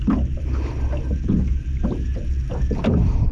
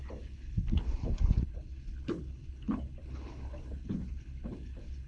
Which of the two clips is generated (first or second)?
second